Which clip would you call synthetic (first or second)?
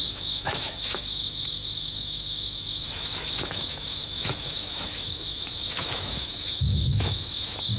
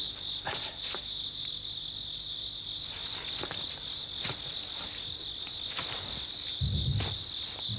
first